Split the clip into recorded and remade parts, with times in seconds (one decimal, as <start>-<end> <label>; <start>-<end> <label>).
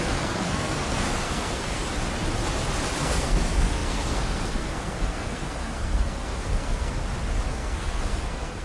0.0-1.9 remade; 1.9-3.0 recorded; 3.0-7.0 remade; 7.0-7.5 recorded; 7.5-8.6 remade